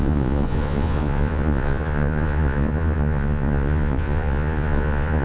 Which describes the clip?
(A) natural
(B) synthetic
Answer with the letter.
B